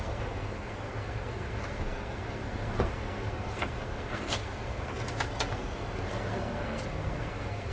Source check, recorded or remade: remade